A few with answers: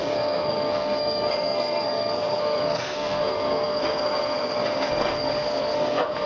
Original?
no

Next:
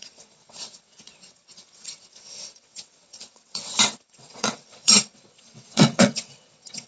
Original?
no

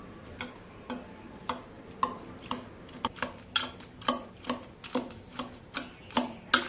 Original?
yes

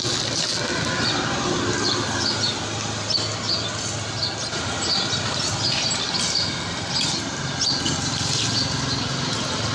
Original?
yes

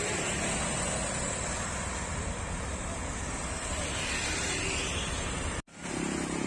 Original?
yes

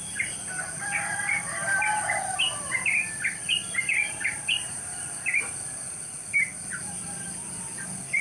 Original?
no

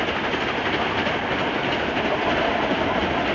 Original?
yes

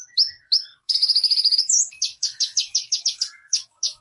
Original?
no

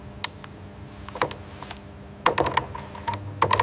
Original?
yes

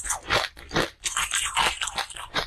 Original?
yes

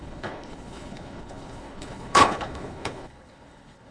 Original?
no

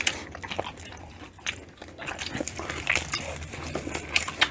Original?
yes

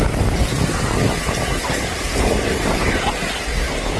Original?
yes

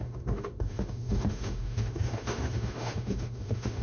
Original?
no